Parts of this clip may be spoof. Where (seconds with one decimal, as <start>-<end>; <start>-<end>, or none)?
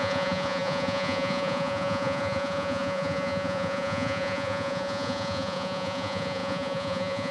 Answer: 0.0-7.3